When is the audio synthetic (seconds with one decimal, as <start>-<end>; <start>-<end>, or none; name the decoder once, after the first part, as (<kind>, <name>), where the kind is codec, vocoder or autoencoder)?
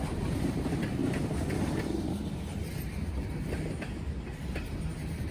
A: 0.0-1.0 (vocoder, BigVGAN v2); 4.0-5.3